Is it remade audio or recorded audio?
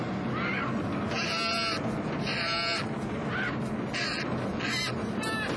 recorded